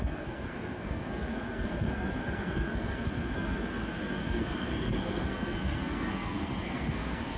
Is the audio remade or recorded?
remade